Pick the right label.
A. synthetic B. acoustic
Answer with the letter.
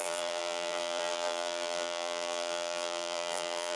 A